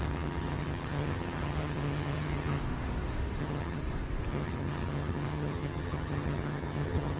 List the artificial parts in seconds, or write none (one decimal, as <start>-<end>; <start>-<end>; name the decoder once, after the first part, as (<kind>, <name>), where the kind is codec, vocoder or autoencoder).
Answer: 0.0-2.6 (vocoder, HiFi-GAN); 3.4-3.8; 4.3-7.2